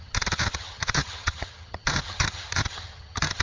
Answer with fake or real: fake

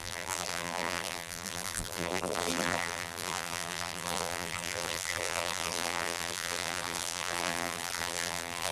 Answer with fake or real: fake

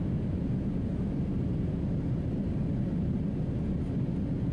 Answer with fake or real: real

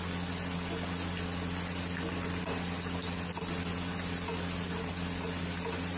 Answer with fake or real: real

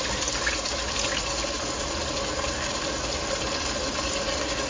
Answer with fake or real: real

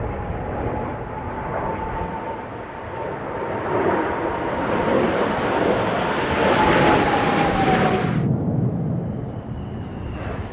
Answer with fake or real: real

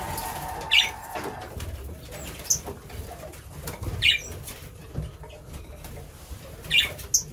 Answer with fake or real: real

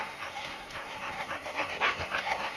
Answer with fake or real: fake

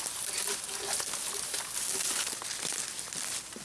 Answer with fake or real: real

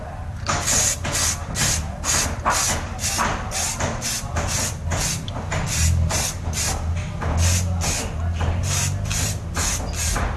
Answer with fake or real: real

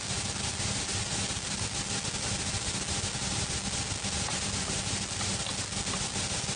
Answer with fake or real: real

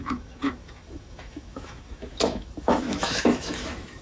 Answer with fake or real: fake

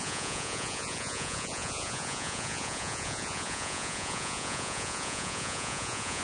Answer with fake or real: fake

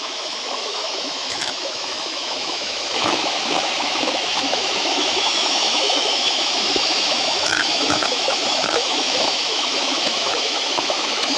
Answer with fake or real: fake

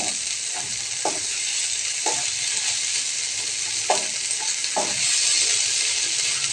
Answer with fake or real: real